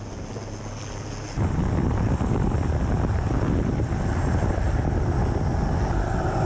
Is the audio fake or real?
real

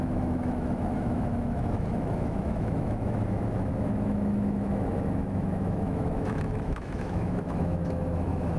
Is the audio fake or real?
fake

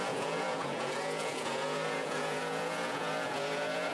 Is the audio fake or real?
fake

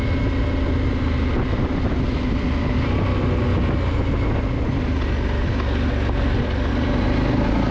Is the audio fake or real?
real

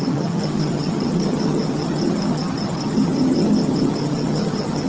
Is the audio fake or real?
fake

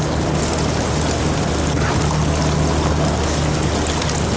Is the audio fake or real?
real